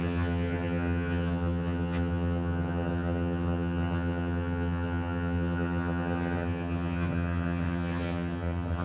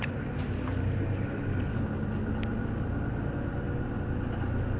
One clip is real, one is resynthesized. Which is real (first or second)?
second